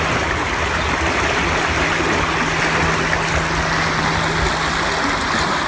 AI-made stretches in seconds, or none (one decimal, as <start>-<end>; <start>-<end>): none